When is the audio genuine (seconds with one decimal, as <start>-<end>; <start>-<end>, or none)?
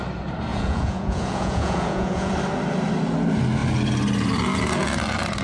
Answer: 0.0-0.5; 2.3-5.4